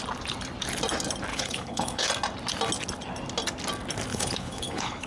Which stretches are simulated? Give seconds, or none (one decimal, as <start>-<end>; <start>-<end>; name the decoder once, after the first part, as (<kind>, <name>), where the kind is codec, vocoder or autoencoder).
1.3-2.1 (codec, HILCodec); 4.1-5.1